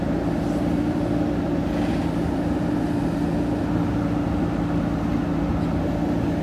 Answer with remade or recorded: recorded